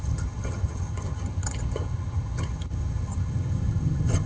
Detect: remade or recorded remade